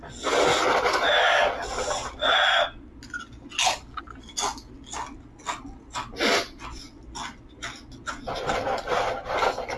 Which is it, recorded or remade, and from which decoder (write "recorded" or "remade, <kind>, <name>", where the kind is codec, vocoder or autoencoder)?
recorded